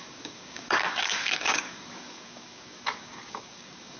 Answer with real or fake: fake